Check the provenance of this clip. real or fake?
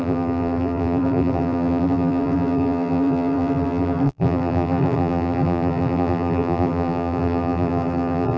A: fake